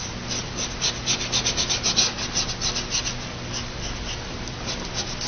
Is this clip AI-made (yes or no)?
no